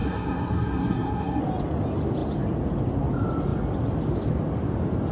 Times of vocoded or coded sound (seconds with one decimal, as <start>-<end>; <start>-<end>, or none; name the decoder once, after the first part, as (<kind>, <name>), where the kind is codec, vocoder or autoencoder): 0.0-1.4 (codec, SNAC)